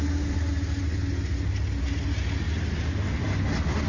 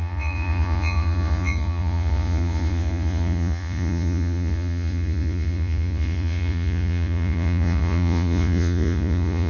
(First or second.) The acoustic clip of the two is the first